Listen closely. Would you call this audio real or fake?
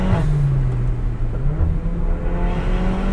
real